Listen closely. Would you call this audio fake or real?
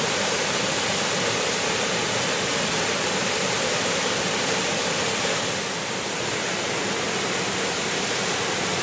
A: real